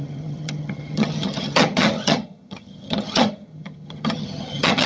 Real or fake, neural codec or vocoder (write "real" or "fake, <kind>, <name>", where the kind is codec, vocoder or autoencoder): fake, vocoder, HiFi-GAN